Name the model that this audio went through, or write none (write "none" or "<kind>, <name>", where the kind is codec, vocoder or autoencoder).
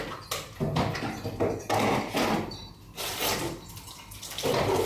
none